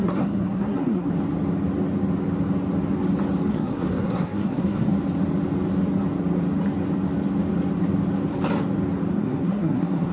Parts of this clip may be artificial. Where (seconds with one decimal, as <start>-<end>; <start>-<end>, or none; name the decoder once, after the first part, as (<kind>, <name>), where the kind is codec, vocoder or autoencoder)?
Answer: 0.0-1.1 (codec, SNAC); 3.5-4.9; 9.1-10.1

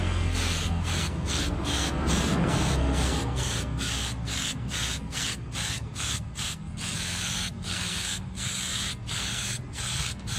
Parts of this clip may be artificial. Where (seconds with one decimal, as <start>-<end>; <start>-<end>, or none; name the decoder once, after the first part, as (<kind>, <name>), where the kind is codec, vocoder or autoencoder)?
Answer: 0.0-10.4 (codec, SNAC)

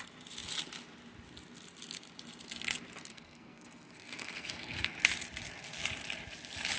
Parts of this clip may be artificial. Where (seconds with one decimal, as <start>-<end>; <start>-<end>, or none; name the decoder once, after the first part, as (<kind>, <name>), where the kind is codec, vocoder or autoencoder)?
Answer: 3.1-5.0 (codec, SNAC)

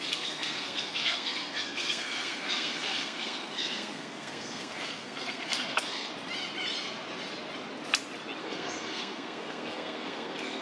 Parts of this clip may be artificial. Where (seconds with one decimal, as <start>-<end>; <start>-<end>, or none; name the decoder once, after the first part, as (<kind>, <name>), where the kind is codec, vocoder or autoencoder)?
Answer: 0.0-6.1 (codec, SNAC); 8.4-10.6

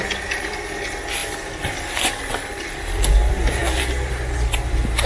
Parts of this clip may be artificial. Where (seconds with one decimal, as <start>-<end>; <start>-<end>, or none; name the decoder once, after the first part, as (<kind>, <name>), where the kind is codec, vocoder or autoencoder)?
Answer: none

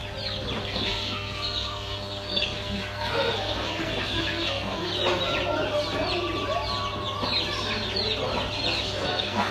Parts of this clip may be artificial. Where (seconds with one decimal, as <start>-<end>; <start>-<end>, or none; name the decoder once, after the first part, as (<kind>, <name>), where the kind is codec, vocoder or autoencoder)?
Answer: 0.6-4.9 (codec, SNAC); 8.8-9.5